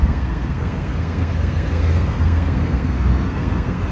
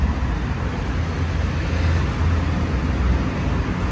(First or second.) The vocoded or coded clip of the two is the first